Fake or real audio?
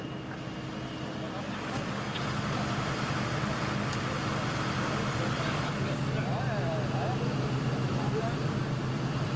real